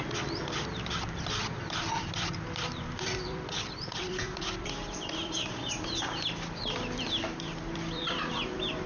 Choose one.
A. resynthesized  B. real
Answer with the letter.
A